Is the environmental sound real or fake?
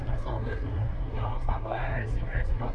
fake